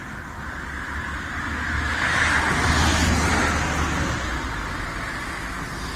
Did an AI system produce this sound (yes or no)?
no